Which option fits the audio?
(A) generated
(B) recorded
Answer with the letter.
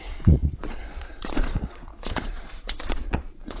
A